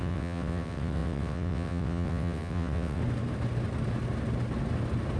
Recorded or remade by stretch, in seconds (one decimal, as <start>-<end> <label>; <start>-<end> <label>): 0.0-3.0 remade; 3.0-5.2 recorded